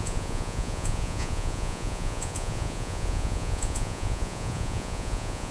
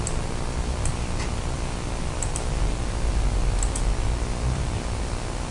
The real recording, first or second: second